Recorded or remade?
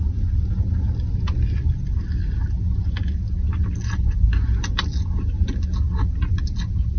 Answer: recorded